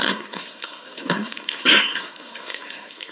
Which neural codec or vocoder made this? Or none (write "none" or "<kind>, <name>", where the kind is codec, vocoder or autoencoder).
codec, SNAC